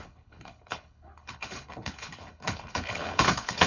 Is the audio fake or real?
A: fake